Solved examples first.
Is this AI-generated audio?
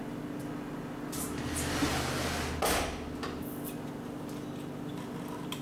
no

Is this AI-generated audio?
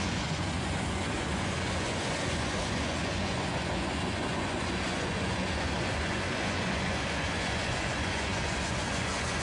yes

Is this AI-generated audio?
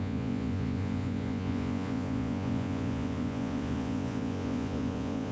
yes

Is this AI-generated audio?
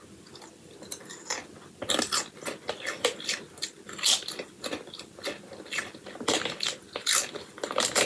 no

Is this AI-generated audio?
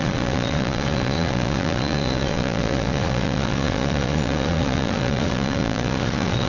yes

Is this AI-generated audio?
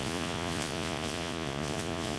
yes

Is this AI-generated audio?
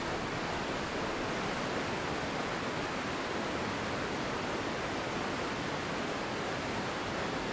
no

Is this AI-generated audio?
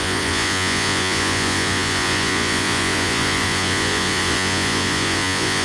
yes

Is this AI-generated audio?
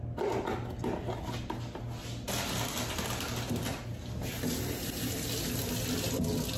no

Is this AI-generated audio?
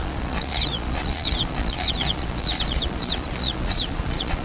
yes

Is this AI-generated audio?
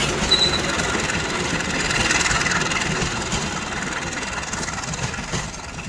no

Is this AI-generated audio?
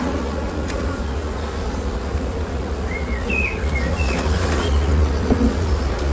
yes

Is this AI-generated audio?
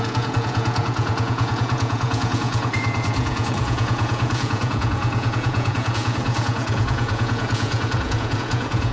yes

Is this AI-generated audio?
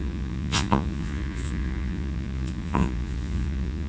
yes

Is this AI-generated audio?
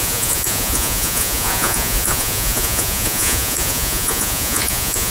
yes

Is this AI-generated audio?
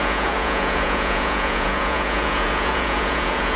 yes